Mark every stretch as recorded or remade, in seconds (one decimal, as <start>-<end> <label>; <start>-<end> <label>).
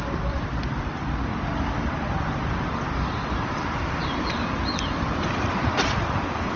0.0-6.6 remade